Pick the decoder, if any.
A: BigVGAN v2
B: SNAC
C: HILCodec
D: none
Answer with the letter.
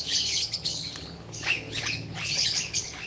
C